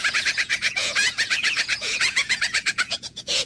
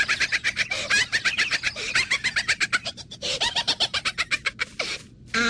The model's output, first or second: first